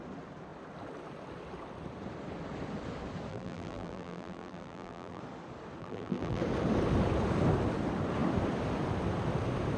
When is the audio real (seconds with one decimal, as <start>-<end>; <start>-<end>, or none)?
0.0-3.3; 5.2-5.8; 6.4-9.8